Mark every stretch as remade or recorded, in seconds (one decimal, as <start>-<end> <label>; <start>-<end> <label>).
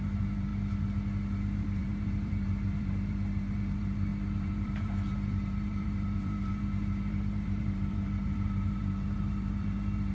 0.0-0.5 remade; 0.5-1.4 recorded; 1.4-10.1 remade